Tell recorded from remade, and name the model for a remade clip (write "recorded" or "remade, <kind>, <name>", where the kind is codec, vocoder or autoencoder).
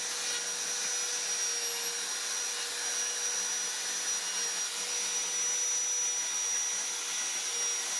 recorded